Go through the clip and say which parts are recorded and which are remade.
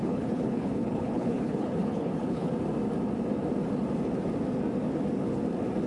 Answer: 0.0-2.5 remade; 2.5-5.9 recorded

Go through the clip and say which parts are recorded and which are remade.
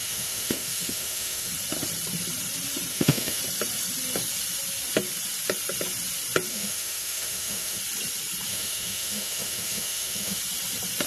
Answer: 0.0-1.5 remade; 1.5-2.9 recorded; 2.9-3.4 remade; 3.4-6.5 recorded; 6.5-7.8 remade; 7.8-8.5 recorded; 8.5-10.4 remade; 10.4-11.1 recorded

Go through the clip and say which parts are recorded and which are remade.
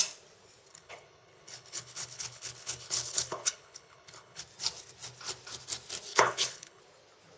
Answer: 0.0-0.7 recorded; 0.7-4.4 remade; 4.4-6.1 recorded; 6.1-6.8 remade; 6.8-7.4 recorded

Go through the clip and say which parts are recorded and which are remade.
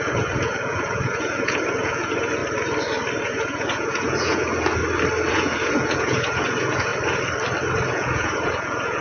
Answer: 0.0-2.4 remade; 2.4-3.2 recorded; 3.2-4.8 remade; 4.8-5.3 recorded; 5.3-6.9 remade; 6.9-7.9 recorded; 7.9-9.0 remade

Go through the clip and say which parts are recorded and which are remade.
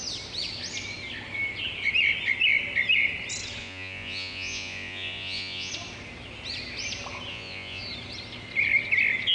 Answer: 0.0-3.6 recorded; 3.6-5.7 remade; 5.7-7.3 recorded; 7.3-7.8 remade; 7.8-9.3 recorded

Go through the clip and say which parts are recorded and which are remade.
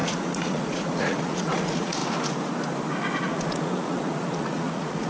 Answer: 0.0-2.0 remade; 2.0-3.2 recorded; 3.2-5.1 remade